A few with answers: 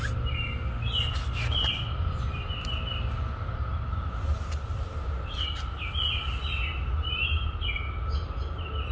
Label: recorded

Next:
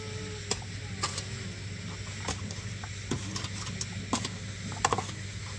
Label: recorded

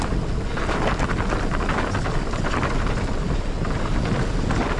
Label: recorded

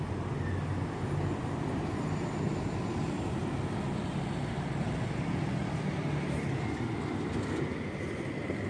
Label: recorded